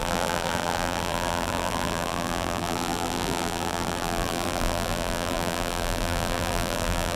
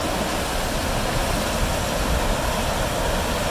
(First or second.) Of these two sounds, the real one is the second